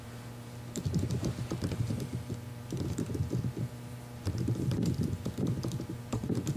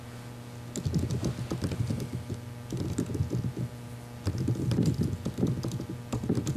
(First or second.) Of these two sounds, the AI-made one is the first